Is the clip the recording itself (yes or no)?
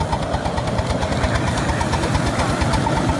yes